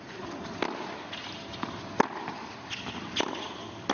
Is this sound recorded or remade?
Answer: recorded